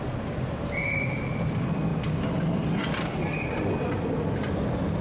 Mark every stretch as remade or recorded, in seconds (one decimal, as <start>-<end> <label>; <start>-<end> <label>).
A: 0.0-5.0 recorded